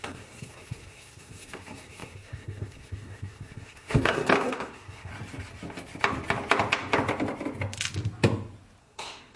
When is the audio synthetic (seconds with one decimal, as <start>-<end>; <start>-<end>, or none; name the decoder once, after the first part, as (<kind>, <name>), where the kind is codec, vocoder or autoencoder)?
0.0-5.1 (codec, SNAC); 8.8-9.4